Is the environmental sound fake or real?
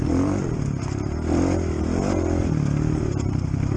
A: real